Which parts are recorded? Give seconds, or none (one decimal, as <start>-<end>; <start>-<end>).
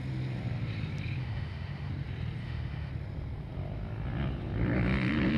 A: 0.0-1.2; 1.9-2.4; 2.9-5.4